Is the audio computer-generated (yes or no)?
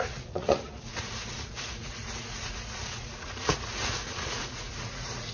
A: yes